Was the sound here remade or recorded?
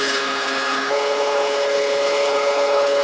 remade